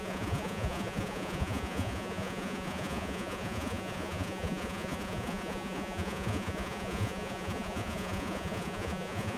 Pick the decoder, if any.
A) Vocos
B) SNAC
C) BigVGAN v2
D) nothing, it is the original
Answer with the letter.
A